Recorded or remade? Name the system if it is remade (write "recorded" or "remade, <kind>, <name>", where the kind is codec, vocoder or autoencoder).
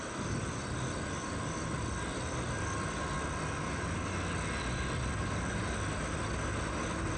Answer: recorded